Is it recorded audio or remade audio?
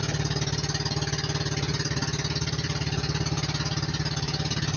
recorded